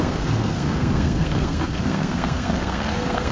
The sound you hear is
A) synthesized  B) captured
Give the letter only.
A